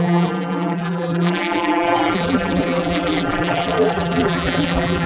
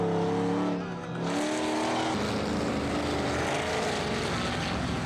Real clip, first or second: second